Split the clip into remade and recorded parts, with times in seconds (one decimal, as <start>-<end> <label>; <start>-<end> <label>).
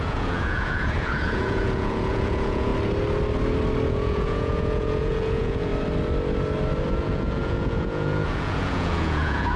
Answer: 0.0-2.7 remade; 2.7-3.9 recorded; 3.9-5.7 remade; 5.7-6.9 recorded; 6.9-9.6 remade